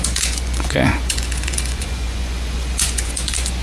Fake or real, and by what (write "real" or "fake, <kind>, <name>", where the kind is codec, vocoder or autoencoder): fake, vocoder, Vocos